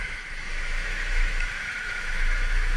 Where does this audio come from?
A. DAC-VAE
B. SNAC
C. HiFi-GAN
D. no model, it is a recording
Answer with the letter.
A